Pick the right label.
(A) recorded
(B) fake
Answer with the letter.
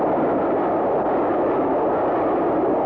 A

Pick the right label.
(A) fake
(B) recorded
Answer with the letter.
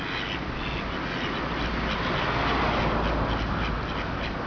B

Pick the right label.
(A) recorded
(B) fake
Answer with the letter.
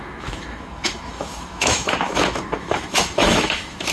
B